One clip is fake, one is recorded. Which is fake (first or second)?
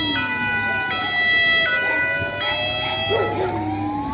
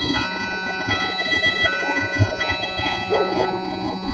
second